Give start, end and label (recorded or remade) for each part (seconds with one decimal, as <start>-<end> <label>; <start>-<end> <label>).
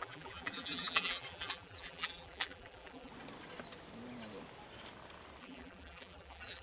0.0-3.1 remade; 3.1-5.4 recorded; 5.4-6.6 remade